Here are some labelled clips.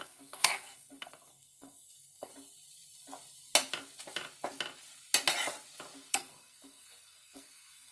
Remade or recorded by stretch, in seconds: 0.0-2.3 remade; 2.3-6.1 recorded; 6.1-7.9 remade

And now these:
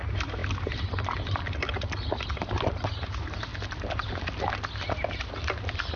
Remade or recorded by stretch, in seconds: 0.0-6.0 recorded

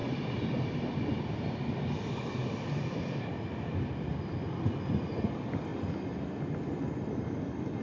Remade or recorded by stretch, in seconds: 0.0-7.8 recorded